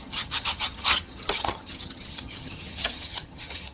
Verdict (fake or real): fake